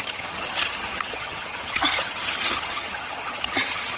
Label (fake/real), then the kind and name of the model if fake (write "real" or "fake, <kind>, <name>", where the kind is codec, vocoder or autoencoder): fake, vocoder, HiFi-GAN